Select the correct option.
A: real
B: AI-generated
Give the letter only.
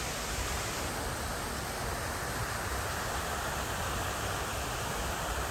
B